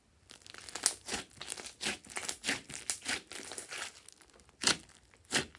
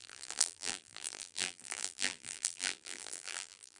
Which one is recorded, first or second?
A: first